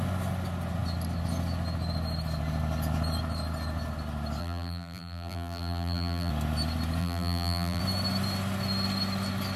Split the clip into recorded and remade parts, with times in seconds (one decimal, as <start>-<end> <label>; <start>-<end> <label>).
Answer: 0.0-4.4 recorded; 4.4-6.3 remade; 6.3-7.0 recorded; 7.0-7.8 remade; 7.8-9.6 recorded